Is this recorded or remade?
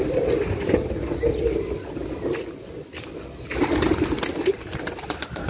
recorded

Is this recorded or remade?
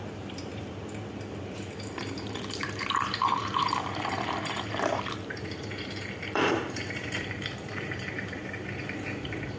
remade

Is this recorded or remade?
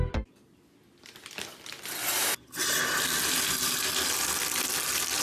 recorded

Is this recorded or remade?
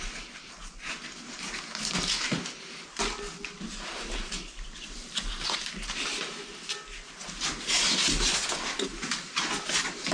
recorded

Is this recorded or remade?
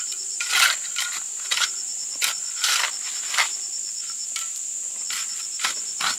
recorded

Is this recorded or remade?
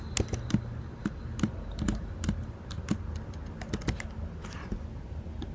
recorded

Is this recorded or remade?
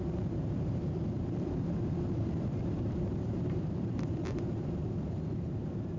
remade